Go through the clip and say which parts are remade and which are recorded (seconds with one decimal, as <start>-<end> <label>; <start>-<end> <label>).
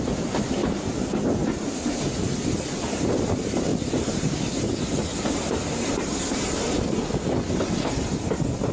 0.0-0.6 recorded; 0.6-1.2 remade; 1.2-3.7 recorded; 3.7-4.3 remade; 4.3-5.1 recorded; 5.1-6.7 remade; 6.7-8.7 recorded